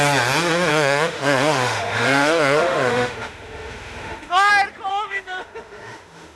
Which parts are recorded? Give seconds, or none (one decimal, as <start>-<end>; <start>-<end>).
0.0-0.7; 4.5-4.9